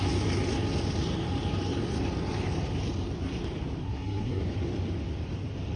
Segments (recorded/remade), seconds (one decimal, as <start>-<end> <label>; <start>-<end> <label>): 0.0-3.8 recorded; 3.8-4.4 remade; 4.4-5.8 recorded